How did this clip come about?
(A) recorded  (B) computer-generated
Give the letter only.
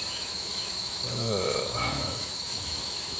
B